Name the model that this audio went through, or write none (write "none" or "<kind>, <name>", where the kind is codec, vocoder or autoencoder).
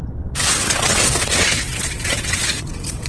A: vocoder, WaveNeXt